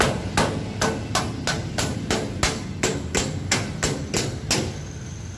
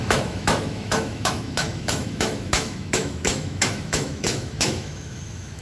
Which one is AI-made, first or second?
second